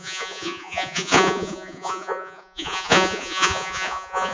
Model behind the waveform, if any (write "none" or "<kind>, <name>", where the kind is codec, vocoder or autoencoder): vocoder, Vocos